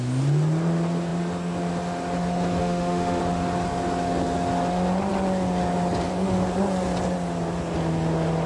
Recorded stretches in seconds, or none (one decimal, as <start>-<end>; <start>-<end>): 0.0-2.6; 3.2-8.5